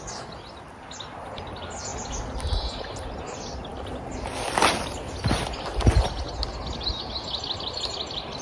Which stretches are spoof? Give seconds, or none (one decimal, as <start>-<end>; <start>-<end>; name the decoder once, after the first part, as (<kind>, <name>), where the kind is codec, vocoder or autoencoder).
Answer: none